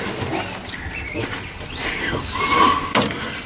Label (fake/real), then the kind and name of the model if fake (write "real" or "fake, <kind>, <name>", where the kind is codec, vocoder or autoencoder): real